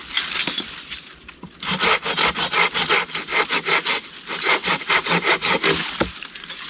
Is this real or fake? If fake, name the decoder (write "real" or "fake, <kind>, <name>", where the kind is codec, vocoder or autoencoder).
real